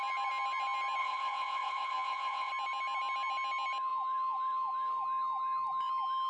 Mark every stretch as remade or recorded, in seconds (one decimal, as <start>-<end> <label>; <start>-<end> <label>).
0.0-1.0 recorded; 1.0-2.5 remade; 2.5-6.3 recorded